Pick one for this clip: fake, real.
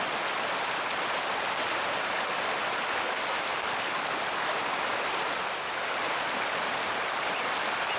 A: real